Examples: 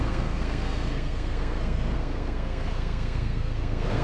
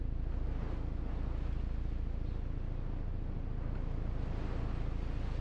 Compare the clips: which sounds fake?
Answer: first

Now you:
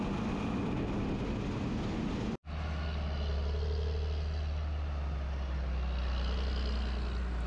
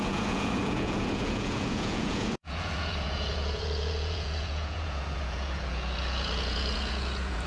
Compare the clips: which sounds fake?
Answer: second